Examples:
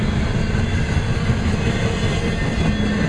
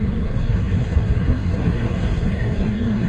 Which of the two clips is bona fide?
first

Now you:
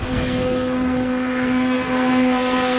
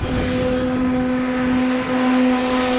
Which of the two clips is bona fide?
second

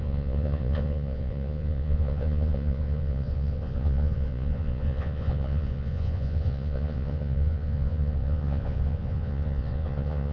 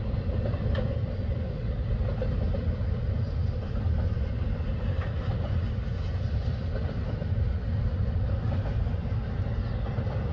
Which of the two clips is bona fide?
second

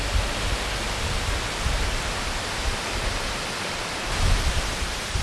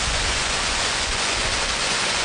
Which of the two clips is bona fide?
first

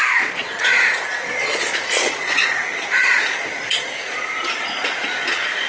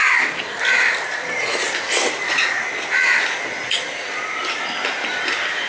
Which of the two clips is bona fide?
second